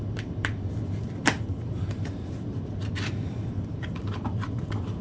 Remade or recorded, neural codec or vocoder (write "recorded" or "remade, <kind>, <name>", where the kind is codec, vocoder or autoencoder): remade, vocoder, BigVGAN v2